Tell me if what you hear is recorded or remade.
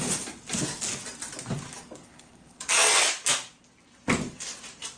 recorded